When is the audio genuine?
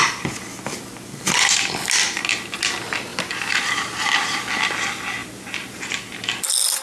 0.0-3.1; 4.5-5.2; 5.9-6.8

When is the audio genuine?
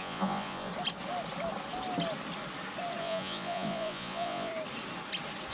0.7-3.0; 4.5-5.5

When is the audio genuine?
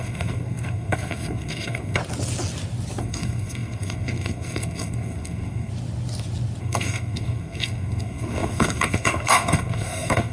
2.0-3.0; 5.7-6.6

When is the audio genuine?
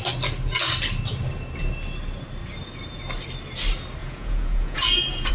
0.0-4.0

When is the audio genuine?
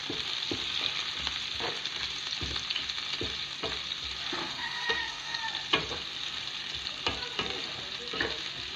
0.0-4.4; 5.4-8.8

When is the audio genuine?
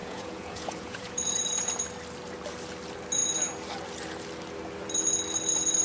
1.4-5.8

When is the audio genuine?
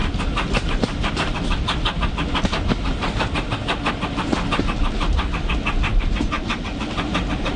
0.0-5.9